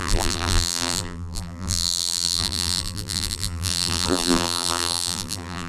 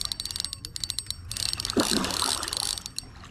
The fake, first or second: first